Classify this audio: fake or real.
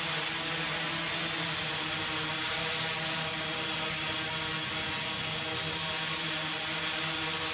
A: real